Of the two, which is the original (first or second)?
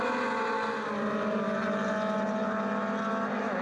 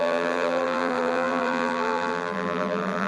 first